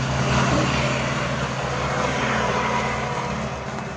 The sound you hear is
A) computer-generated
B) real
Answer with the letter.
B